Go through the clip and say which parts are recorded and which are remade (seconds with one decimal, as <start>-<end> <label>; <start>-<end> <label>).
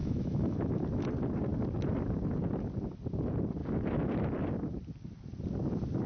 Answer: 0.0-0.8 remade; 0.8-6.1 recorded